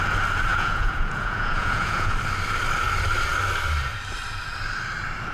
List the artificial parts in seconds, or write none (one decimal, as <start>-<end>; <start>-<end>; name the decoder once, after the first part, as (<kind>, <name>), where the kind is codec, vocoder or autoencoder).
0.5-2.1 (vocoder, Vocos)